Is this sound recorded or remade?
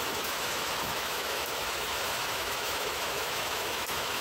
remade